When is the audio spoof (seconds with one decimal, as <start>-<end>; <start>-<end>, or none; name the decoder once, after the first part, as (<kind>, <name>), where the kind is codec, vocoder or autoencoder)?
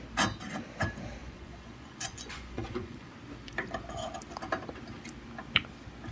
1.2-3.1 (vocoder, Vocos)